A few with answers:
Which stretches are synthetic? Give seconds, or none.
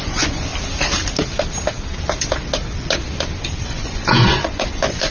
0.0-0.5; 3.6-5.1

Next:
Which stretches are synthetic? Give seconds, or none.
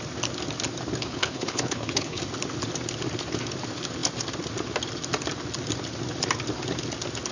1.0-2.2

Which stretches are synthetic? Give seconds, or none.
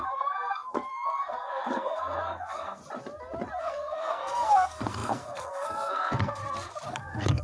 0.0-2.8; 3.6-6.4; 6.9-7.4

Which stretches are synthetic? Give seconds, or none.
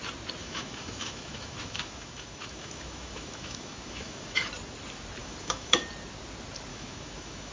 0.4-4.4; 5.2-5.8; 6.7-7.5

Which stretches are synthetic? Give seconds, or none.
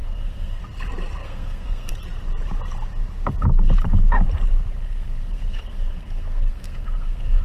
0.0-0.6; 1.2-1.9; 4.8-7.4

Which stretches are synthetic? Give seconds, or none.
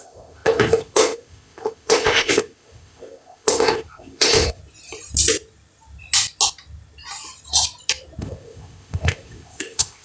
0.0-4.6; 8.2-10.0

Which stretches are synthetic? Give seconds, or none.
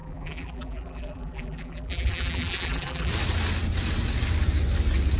0.0-3.1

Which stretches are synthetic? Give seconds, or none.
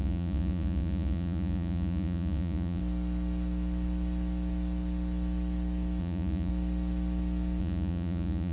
0.0-2.8; 6.0-6.5; 7.6-8.5